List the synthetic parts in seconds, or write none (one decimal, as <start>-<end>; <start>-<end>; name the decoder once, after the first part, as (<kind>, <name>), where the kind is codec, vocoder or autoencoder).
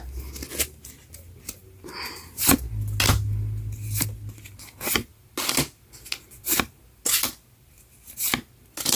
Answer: none